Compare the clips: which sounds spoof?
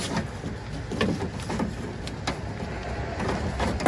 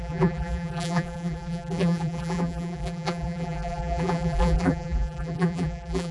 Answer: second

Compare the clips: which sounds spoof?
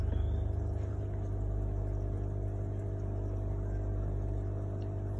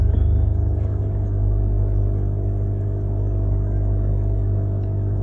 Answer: second